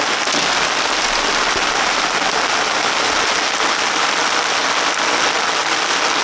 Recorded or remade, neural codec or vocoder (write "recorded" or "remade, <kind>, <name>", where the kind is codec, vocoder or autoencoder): recorded